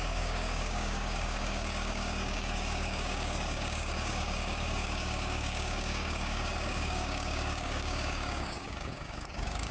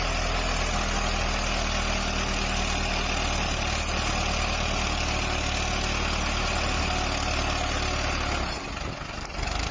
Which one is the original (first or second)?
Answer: second